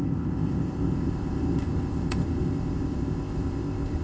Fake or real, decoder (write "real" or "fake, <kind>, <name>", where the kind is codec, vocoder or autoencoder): fake, codec, ZipCodec